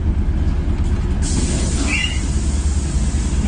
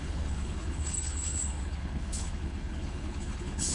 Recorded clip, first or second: first